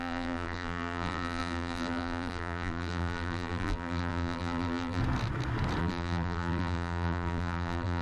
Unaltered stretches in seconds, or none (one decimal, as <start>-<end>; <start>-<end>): 5.0-5.8